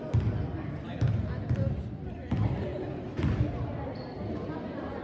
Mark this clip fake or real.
real